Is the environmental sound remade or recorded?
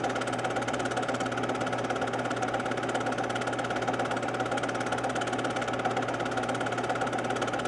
recorded